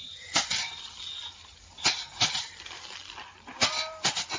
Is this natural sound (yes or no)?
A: yes